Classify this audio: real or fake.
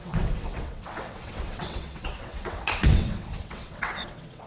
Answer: fake